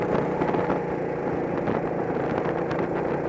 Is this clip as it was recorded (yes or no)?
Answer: yes